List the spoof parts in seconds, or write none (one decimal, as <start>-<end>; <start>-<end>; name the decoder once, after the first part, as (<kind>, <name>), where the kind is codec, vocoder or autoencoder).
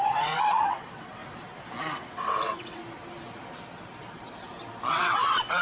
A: 0.0-1.2 (vocoder, WaveNeXt); 1.8-2.8; 4.9-5.6